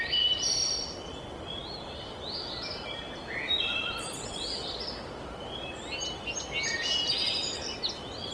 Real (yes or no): yes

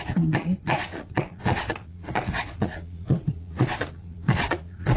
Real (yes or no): no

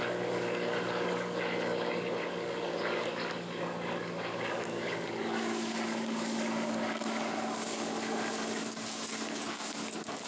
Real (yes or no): no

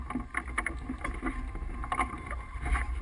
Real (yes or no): yes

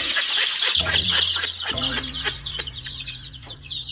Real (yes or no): no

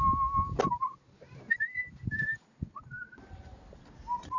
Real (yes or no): yes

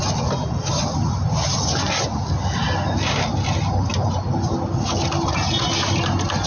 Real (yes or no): yes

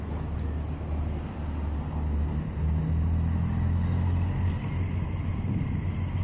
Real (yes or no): yes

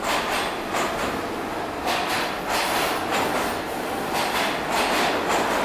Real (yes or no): yes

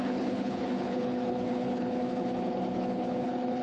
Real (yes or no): no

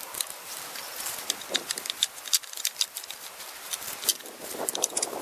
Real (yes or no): yes